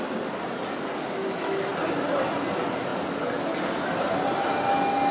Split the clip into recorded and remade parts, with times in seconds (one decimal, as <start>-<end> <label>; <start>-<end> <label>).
0.0-1.2 recorded; 1.2-1.7 remade; 1.7-5.1 recorded